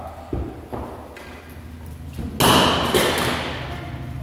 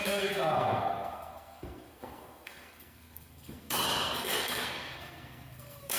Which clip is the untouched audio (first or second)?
first